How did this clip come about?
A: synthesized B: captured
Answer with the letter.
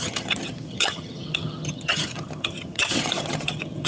A